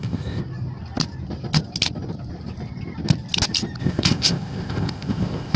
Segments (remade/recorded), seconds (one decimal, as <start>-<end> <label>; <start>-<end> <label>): 0.0-0.4 remade; 0.4-3.8 recorded; 3.8-5.6 remade